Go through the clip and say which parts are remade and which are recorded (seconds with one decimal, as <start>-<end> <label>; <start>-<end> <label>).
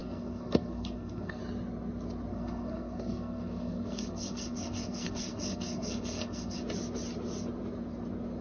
0.0-1.4 remade; 1.4-2.3 recorded; 2.3-6.6 remade; 6.6-8.4 recorded